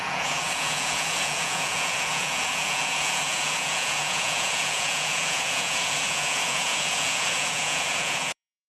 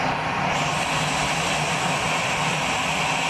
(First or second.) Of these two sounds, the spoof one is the first